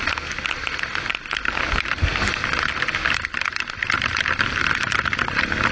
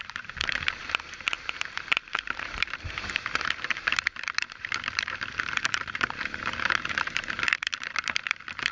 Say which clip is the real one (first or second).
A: first